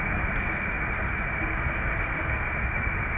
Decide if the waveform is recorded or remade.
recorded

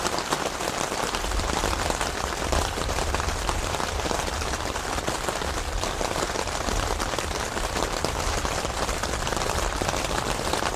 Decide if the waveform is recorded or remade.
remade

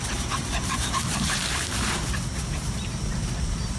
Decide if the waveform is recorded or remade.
remade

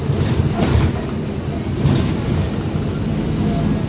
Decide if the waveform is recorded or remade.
recorded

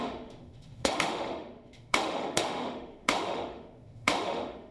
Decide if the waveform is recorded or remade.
remade